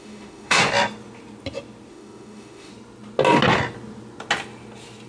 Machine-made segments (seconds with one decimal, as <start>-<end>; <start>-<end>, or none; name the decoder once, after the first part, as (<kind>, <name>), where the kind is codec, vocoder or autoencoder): 0.0-0.6 (autoencoder, DAC-VAE); 1.9-2.7